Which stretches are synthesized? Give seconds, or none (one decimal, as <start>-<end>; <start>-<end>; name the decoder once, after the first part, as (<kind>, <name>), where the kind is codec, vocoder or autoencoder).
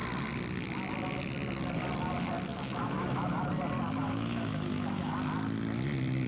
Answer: 2.5-3.4 (autoencoder, DAC-VAE); 4.0-5.1